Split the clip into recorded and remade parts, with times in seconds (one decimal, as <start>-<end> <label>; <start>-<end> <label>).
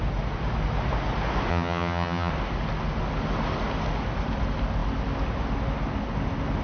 0.0-1.5 recorded; 1.5-2.3 remade; 2.3-6.6 recorded